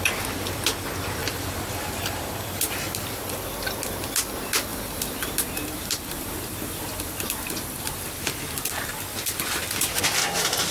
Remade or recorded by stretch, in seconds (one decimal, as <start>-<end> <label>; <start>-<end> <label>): 0.0-1.2 recorded; 1.2-3.2 remade; 3.2-4.7 recorded; 4.7-8.1 remade; 8.1-10.7 recorded